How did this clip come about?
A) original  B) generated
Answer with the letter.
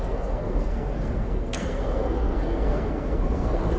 B